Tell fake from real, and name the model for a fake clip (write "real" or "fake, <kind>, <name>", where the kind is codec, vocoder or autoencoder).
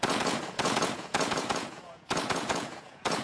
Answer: fake, vocoder, Vocos